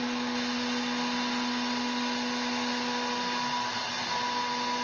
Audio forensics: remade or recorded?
recorded